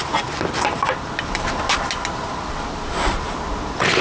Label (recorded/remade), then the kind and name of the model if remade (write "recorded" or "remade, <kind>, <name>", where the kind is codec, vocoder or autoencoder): recorded